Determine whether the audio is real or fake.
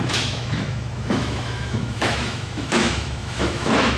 fake